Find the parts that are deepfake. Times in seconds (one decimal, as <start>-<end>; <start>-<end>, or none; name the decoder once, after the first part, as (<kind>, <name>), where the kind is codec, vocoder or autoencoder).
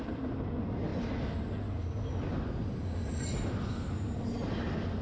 none